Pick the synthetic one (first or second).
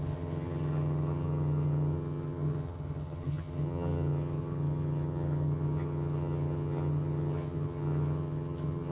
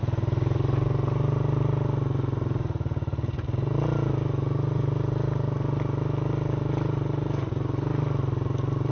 first